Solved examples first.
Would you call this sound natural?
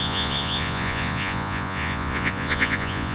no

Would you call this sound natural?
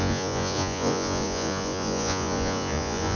no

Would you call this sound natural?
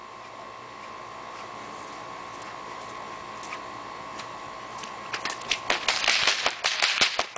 yes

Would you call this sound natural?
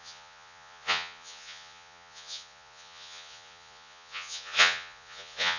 no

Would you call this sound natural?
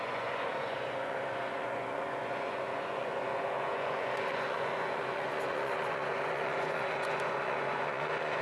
no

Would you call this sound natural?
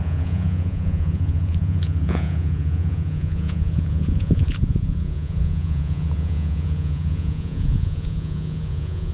no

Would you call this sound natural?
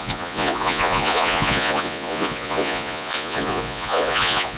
no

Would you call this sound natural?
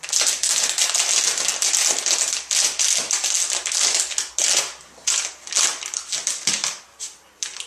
yes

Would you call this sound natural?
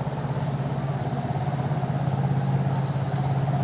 yes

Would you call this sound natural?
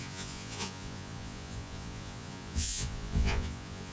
no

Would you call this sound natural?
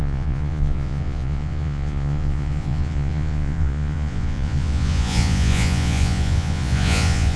no